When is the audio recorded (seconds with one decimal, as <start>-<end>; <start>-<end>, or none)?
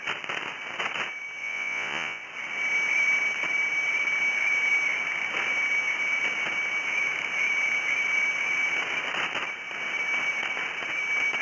0.0-1.4; 2.2-11.4